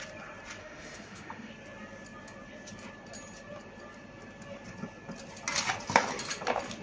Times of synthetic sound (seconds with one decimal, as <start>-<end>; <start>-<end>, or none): 0.6-1.5